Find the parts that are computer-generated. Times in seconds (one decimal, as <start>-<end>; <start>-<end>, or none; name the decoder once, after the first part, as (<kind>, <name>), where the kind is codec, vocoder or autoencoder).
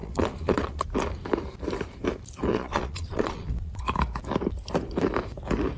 0.0-0.8 (vocoder, Vocos); 2.5-3.8